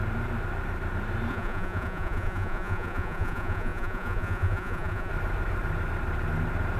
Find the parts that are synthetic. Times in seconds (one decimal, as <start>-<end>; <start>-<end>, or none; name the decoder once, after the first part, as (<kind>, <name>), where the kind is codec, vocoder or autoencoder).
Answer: 1.3-5.1 (vocoder, Vocos)